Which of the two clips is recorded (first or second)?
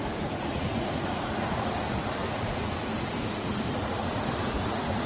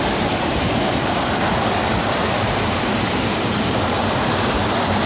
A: second